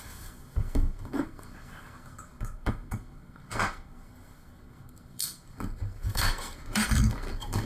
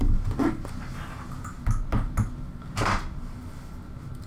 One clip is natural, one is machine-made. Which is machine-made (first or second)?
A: first